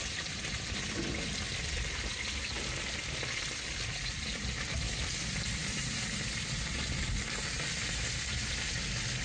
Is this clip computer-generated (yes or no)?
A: no